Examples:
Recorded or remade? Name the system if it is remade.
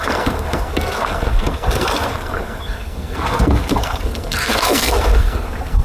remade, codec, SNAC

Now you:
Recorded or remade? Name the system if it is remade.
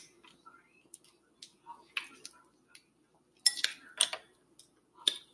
recorded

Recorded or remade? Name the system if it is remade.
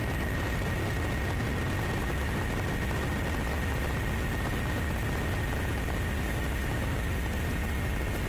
recorded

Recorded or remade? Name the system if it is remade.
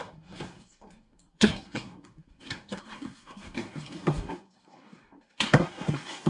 remade, codec, SNAC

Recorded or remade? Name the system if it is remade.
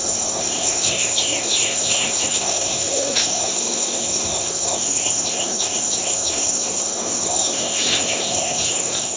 remade, codec, SNAC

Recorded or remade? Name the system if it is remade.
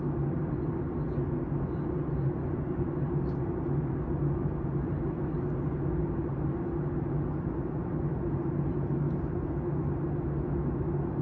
recorded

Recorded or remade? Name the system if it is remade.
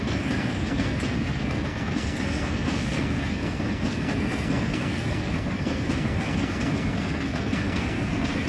remade, codec, SNAC